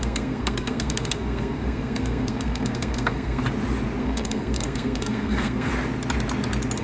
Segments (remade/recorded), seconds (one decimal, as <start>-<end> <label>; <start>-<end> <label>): 0.0-3.4 remade; 3.4-4.0 recorded; 4.0-5.7 remade; 5.7-6.8 recorded